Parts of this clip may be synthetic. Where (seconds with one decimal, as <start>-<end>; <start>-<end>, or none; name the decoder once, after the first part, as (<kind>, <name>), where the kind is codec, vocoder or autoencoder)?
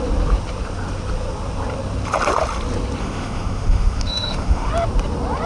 3.0-4.7 (autoencoder, DAC-VAE)